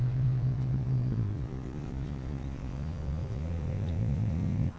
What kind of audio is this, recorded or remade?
remade